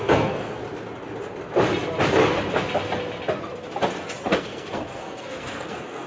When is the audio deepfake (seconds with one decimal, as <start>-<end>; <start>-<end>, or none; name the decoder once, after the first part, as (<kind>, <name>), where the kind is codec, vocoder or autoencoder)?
0.0-0.6 (codec, SNAC); 4.3-6.1